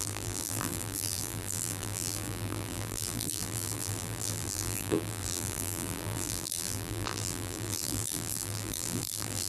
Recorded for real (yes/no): no